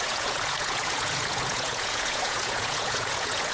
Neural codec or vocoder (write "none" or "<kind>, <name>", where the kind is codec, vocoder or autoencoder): vocoder, Vocos